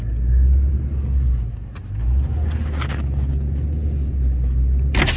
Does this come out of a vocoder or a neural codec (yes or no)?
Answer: no